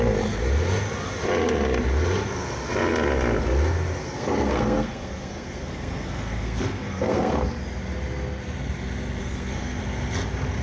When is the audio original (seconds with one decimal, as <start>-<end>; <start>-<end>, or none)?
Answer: 0.0-4.0; 7.6-9.2; 9.8-10.6